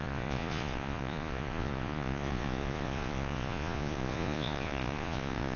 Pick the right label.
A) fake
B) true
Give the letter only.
A